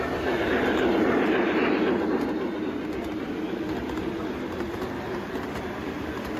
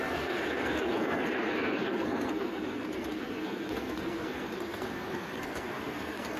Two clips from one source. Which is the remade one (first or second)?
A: second